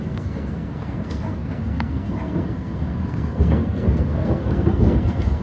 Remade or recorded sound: remade